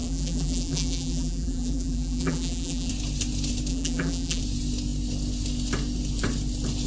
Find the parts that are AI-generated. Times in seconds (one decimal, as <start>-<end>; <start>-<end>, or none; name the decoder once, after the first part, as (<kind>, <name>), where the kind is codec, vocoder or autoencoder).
0.0-2.9 (vocoder, BigVGAN v2); 3.7-4.4